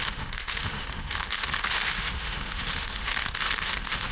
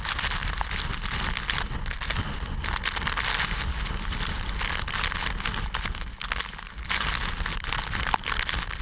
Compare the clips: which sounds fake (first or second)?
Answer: first